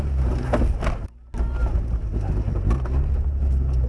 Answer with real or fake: real